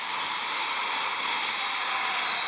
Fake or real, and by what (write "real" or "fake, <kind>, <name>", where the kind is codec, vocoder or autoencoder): real